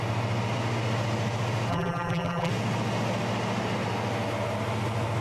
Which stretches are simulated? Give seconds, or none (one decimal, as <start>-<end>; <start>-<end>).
1.7-2.5